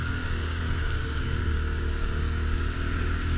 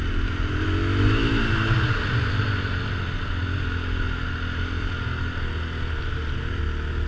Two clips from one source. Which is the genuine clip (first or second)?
second